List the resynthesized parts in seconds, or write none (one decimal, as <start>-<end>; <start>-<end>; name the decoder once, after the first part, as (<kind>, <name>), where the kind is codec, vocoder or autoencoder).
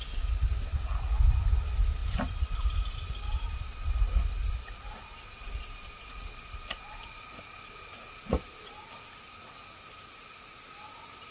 none